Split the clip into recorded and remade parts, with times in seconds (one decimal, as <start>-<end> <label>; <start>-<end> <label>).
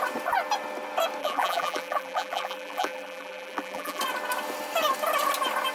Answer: 0.0-1.2 recorded; 1.2-4.0 remade; 4.0-5.7 recorded